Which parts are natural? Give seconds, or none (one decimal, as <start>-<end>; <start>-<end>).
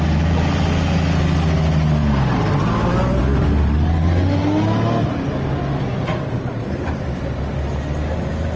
0.0-8.6